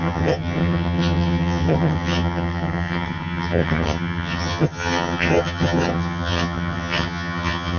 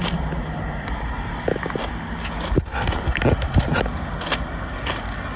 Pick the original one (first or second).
second